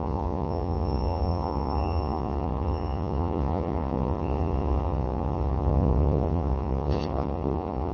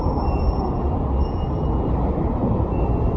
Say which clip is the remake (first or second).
first